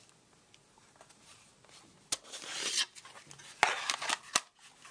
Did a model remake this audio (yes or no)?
no